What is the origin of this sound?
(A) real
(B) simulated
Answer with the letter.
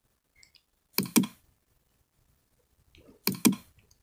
A